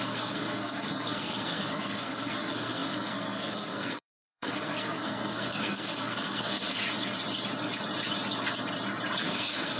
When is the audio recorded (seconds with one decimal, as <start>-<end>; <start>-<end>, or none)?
6.8-9.2